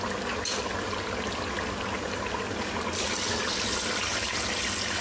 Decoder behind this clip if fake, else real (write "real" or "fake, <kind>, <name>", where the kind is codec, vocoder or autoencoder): real